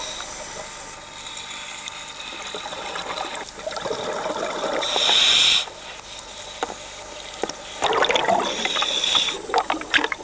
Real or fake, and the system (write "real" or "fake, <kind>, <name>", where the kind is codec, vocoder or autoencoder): real